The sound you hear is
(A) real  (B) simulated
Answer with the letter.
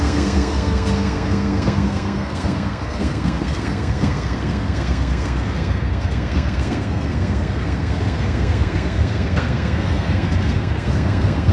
B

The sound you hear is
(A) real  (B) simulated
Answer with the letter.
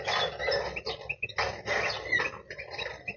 A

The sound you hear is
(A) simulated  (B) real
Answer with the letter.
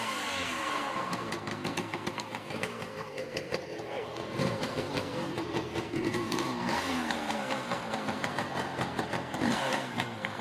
A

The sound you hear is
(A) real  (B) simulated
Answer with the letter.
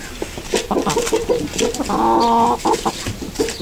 A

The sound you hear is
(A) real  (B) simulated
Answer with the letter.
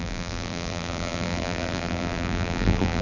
B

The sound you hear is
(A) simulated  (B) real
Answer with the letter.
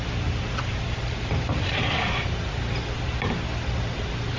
B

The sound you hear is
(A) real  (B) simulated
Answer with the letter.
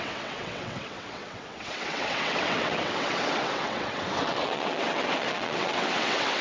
B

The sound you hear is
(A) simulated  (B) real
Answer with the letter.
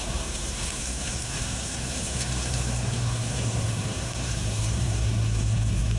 A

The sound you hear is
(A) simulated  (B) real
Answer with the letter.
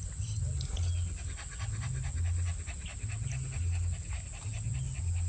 B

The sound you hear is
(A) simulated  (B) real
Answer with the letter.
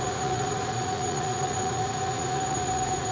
A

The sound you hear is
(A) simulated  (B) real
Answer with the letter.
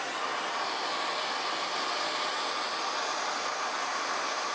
B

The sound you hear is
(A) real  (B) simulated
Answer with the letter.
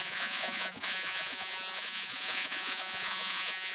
B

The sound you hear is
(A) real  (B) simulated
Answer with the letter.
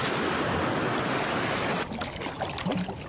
A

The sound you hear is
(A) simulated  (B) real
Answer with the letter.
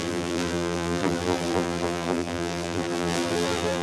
A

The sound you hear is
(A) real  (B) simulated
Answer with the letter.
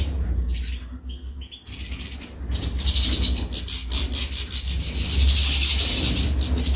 A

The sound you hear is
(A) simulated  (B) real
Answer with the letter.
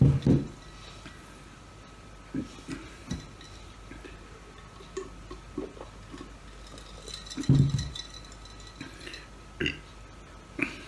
B